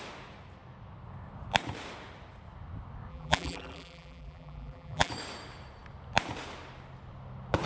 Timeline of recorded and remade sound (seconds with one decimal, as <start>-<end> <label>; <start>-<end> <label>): 0.0-3.1 recorded; 3.1-5.1 remade; 5.1-7.7 recorded